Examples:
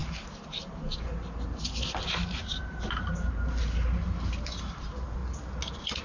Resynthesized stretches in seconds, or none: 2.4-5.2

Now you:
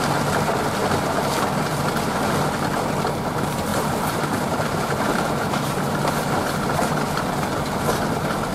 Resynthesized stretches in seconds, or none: 3.7-6.0

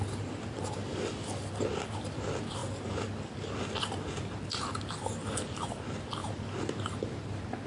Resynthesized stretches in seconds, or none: none

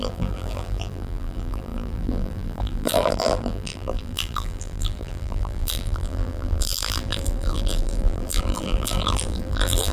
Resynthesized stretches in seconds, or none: 0.0-9.9

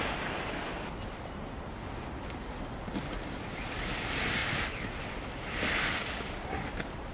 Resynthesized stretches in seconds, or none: 0.0-0.7; 2.1-7.1

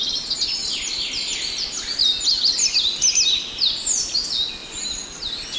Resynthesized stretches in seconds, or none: none

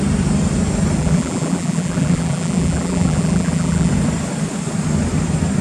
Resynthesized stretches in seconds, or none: 1.0-3.9

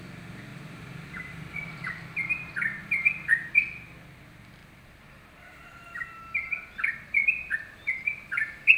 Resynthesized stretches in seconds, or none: 0.5-1.9; 2.8-3.5; 4.6-8.8